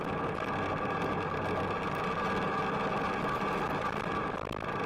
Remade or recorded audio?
recorded